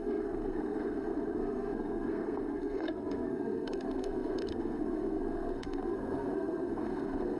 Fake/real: fake